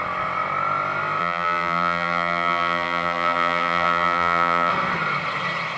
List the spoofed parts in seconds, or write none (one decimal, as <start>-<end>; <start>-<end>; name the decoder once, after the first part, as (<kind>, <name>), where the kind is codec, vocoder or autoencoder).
1.2-4.7 (vocoder, BigVGAN v2)